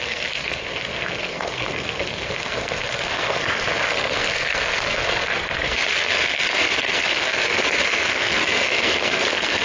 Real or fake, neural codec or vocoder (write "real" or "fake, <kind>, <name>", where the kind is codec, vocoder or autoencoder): fake, codec, SNAC